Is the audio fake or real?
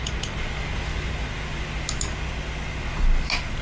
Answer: real